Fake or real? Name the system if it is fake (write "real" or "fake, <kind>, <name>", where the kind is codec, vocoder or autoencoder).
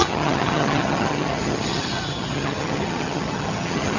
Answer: fake, vocoder, HiFi-GAN